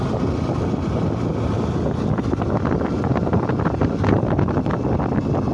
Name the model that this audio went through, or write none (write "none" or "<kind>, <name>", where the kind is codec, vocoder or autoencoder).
none